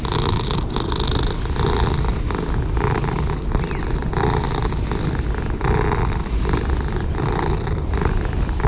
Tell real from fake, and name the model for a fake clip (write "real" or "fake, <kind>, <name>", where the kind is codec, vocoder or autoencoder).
real